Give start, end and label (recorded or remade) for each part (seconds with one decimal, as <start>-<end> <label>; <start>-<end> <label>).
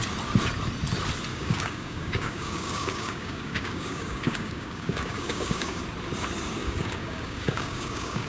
0.0-1.3 recorded; 1.3-5.8 remade; 5.8-6.6 recorded; 6.6-8.3 remade